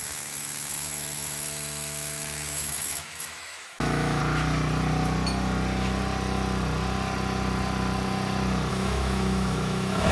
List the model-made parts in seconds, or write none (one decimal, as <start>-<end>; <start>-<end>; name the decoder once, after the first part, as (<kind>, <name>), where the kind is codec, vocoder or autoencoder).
0.0-4.2 (autoencoder, DAC-VAE); 8.7-10.1